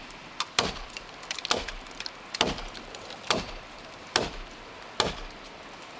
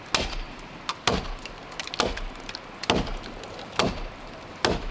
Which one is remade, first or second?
first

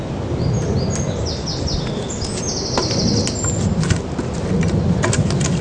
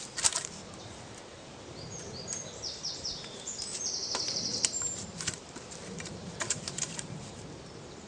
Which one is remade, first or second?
second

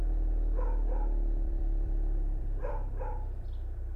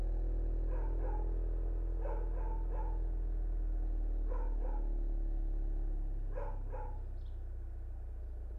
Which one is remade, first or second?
first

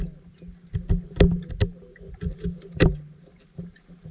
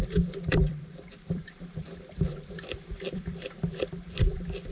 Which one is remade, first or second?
second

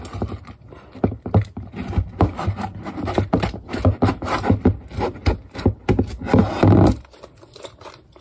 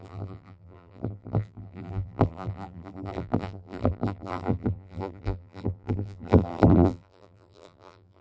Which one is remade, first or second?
second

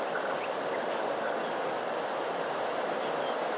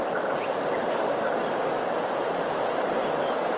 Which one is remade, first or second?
second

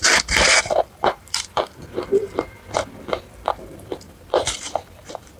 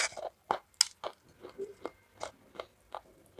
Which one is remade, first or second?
first